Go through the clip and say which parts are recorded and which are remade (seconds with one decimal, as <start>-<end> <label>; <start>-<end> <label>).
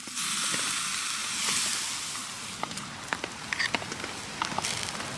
0.0-5.2 recorded